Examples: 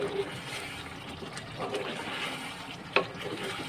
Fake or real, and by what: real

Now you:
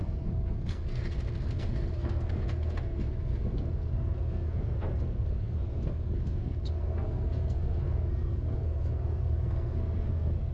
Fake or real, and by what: fake, codec, SNAC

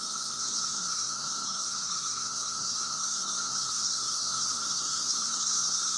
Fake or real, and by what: fake, codec, SNAC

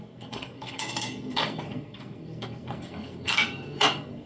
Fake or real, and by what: fake, codec, SNAC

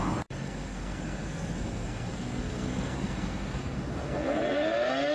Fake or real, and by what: fake, codec, SNAC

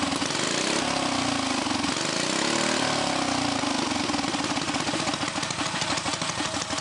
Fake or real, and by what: real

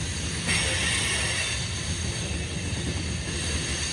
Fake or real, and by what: real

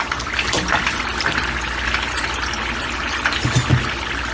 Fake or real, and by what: real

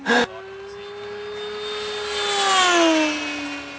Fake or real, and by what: real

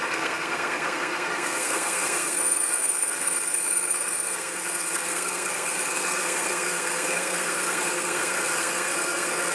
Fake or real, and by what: fake, codec, SNAC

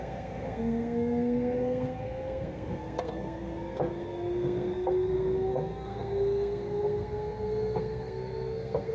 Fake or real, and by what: fake, codec, SNAC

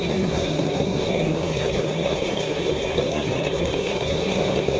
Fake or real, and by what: fake, codec, SNAC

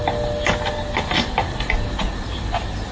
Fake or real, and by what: real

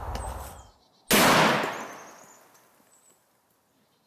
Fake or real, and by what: real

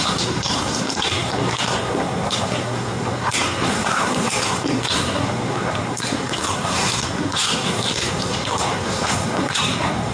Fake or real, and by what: fake, codec, SNAC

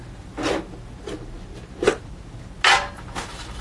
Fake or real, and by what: real